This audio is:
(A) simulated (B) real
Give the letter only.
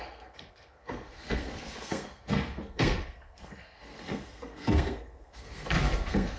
A